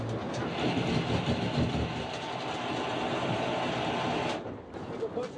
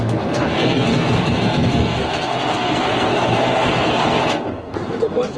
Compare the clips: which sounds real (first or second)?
first